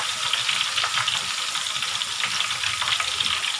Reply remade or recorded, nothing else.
recorded